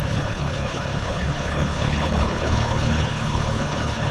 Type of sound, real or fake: fake